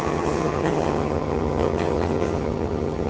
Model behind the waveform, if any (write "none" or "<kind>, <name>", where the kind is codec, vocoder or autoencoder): vocoder, HiFi-GAN